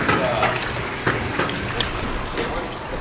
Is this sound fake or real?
real